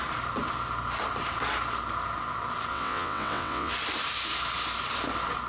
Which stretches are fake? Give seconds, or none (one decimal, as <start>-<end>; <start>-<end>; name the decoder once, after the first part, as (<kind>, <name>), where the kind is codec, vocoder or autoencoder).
2.7-3.7 (vocoder, WaveNeXt)